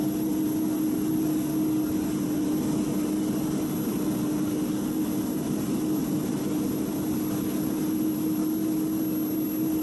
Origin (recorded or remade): recorded